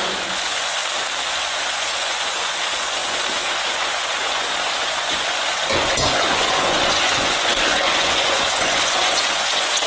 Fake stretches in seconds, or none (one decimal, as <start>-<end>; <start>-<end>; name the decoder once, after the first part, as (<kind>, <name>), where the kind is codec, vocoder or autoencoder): 0.0-0.8 (vocoder, Vocos); 1.3-9.9

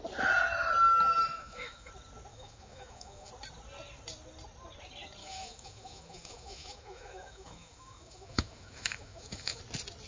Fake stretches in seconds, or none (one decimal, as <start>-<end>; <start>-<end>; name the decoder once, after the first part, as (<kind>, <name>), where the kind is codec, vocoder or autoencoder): 1.2-1.9 (autoencoder, DAC-VAE); 2.3-3.3; 5.2-9.6

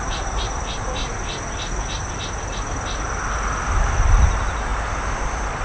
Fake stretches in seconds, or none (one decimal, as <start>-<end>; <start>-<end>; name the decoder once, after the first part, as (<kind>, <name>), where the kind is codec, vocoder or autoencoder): 0.0-1.0 (vocoder, BigVGAN v2); 3.8-5.6

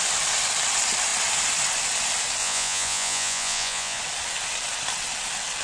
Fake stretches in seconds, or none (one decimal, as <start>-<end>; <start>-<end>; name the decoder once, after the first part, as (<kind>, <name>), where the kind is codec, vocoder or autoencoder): 2.4-4.0 (vocoder, Vocos)

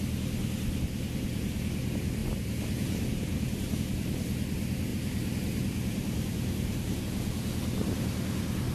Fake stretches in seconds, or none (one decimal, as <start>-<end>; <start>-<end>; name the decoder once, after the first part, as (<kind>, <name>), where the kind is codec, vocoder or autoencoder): 2.2-3.8 (vocoder, BigVGAN v2); 4.9-7.0

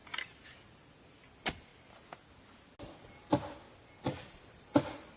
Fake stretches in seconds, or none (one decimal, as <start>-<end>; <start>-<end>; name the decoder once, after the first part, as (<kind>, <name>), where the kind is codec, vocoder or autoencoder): none

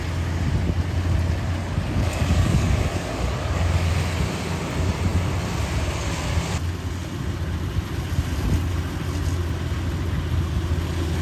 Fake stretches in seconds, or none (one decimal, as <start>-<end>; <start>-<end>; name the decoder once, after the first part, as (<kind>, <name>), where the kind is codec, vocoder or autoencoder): 1.6-3.9 (codec, DAC)

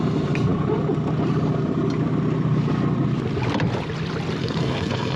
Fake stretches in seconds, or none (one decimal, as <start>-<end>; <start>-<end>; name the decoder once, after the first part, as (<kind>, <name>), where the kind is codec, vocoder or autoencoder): 4.4-5.2 (codec, SNAC)